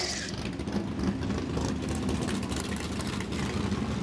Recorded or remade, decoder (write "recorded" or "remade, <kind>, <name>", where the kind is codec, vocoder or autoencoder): recorded